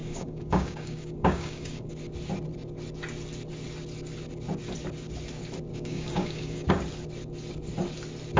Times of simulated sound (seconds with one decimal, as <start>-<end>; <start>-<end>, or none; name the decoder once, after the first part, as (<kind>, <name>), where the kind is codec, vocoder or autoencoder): 0.0-1.9 (codec, DAC); 5.7-6.7